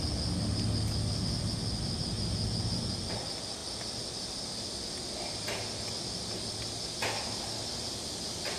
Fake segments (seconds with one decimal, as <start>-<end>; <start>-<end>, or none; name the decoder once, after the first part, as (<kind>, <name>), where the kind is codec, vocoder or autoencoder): none